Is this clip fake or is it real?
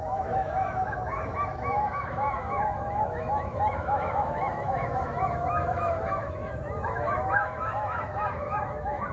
fake